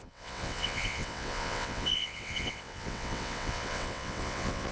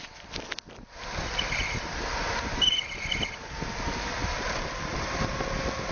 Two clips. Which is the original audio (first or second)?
second